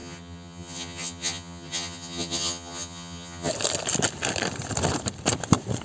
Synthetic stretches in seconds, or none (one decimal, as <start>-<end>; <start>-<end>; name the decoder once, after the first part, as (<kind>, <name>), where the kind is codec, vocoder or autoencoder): 0.0-3.5 (vocoder, HiFi-GAN)